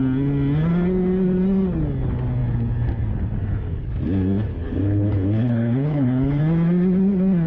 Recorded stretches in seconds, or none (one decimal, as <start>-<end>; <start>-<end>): 0.0-4.5; 6.4-7.5